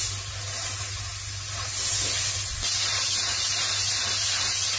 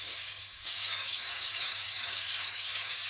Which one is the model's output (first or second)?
second